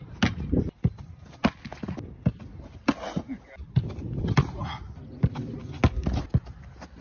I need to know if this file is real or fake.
real